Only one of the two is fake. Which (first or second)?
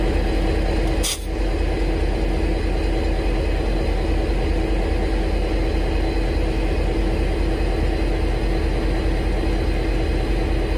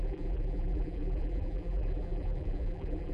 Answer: second